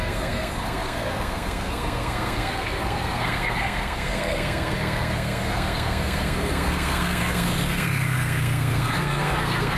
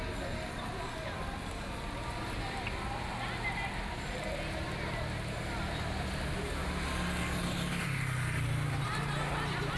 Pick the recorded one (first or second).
second